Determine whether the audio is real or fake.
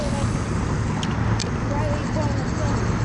real